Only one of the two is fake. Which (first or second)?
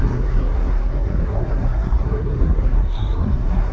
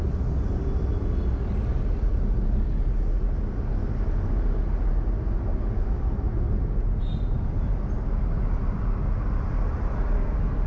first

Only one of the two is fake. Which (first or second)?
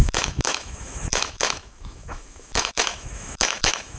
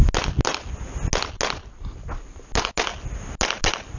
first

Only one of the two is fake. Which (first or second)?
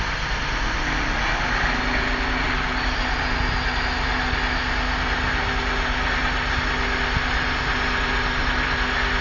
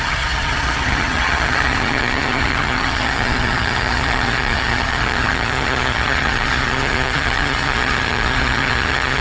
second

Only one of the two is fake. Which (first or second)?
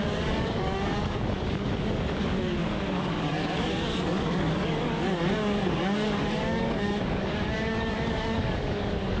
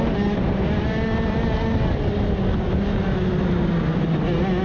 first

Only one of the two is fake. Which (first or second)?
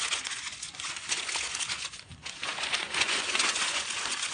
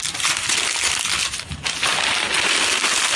first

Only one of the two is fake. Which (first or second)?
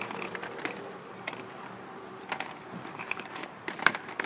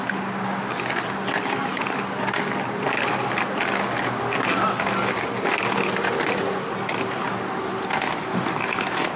first